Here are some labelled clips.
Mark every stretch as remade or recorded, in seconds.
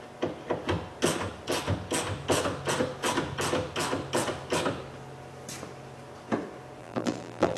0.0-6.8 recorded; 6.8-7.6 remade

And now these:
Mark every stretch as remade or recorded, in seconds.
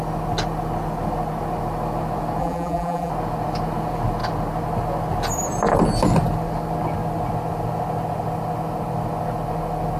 0.0-2.4 recorded; 2.4-3.1 remade; 3.1-10.0 recorded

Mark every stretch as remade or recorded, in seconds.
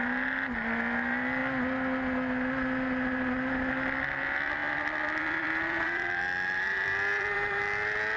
0.0-4.6 recorded; 4.6-7.6 remade; 7.6-8.2 recorded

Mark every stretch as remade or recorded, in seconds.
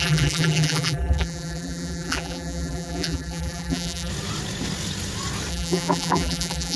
0.0-4.1 remade; 4.1-5.5 recorded; 5.5-6.8 remade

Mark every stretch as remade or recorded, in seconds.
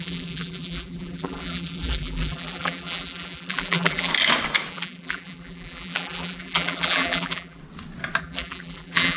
0.0-4.1 remade; 4.1-4.7 recorded; 4.7-7.6 remade; 7.6-8.2 recorded; 8.2-9.2 remade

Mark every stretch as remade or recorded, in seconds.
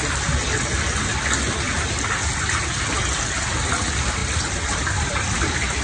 0.0-3.5 recorded; 3.5-5.8 remade